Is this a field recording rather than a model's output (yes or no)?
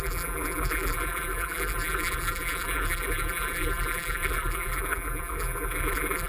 no